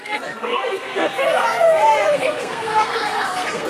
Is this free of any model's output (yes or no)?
no